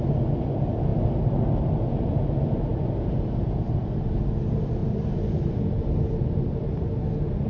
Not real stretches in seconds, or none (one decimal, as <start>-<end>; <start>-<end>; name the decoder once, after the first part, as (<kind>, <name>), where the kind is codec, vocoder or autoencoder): none